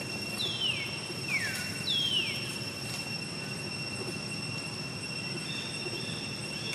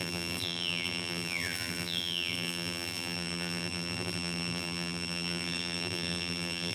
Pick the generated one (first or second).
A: second